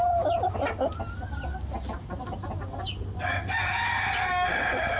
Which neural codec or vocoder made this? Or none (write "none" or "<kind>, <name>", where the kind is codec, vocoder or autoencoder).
none